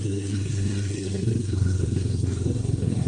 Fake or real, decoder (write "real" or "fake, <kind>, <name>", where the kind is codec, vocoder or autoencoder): fake, codec, SNAC